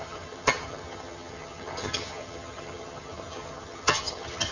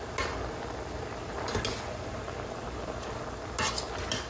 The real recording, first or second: second